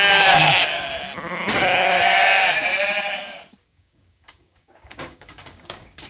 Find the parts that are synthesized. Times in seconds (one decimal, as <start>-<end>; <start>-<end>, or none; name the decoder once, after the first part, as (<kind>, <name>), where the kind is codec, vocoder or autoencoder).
0.0-0.5 (codec, DAC); 3.6-6.1